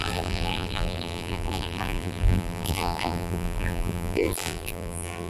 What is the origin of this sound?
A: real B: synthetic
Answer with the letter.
B